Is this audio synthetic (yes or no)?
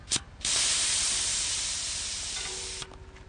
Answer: no